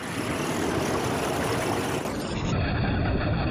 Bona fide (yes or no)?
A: yes